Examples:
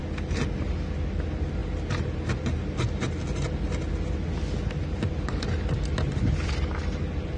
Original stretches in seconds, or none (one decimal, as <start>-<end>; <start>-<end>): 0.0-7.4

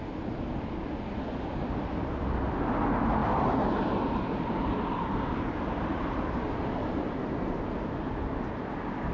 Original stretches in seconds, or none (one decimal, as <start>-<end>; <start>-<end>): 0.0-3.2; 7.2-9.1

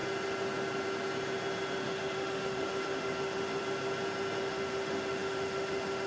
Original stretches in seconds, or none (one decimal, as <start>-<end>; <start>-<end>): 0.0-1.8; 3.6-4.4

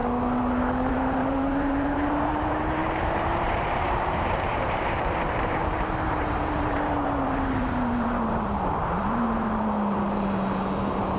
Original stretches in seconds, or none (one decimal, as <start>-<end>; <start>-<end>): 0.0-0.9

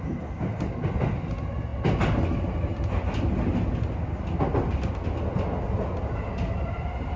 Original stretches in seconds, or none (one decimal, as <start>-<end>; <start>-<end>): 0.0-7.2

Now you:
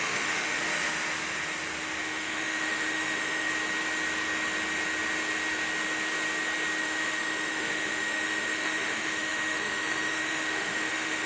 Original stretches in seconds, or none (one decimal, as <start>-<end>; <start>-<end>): 0.6-2.0; 3.5-6.8

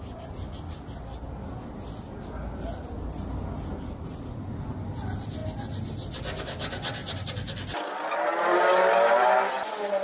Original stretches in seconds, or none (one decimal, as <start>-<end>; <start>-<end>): 0.0-10.0

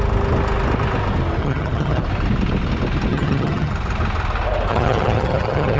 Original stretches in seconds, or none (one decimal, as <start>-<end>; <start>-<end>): 0.0-1.4; 2.0-3.1; 3.7-4.7